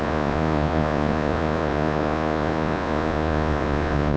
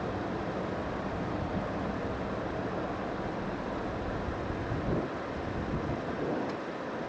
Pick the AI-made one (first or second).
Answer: first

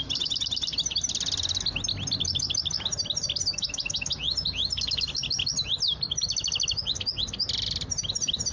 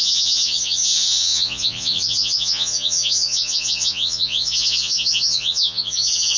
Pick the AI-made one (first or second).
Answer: second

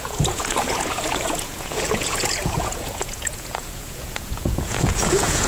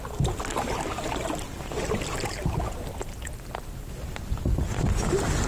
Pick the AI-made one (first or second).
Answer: first